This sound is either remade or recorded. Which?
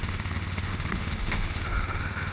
remade